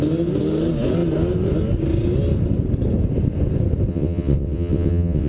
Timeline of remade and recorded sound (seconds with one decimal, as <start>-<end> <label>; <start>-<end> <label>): 0.0-3.9 recorded; 3.9-5.3 remade